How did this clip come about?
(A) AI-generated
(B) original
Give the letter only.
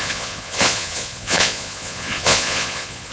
A